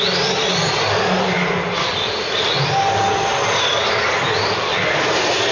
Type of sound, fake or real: real